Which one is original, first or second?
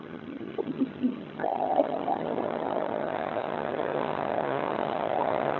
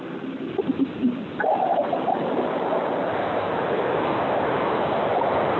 second